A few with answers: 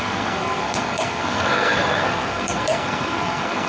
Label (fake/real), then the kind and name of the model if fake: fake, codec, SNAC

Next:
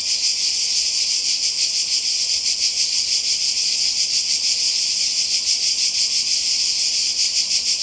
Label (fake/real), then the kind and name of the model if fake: real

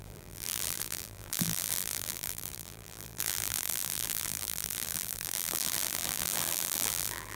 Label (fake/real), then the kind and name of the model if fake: fake, vocoder, BigVGAN v2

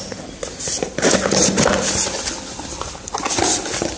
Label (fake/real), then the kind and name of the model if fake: fake, vocoder, BigVGAN v2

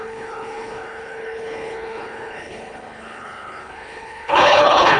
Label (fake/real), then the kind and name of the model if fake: fake, codec, HILCodec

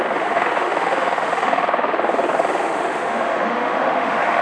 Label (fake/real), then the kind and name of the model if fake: fake, autoencoder, DAC-VAE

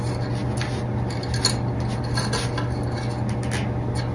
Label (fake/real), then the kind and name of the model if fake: real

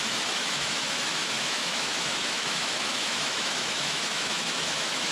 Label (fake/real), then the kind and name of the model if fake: fake, autoencoder, DAC-VAE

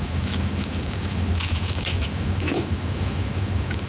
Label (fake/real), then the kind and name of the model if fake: fake, autoencoder, DAC-VAE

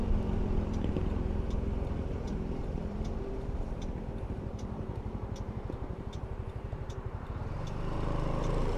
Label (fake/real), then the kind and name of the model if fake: fake, vocoder, BigVGAN v2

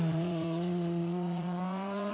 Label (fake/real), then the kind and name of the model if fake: fake, vocoder, Vocos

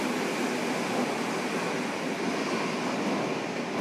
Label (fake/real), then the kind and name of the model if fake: real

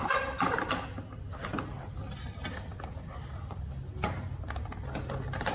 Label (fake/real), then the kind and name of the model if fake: real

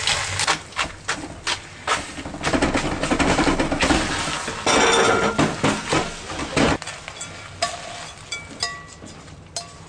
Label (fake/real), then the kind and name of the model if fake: real